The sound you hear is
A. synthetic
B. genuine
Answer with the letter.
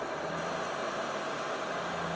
B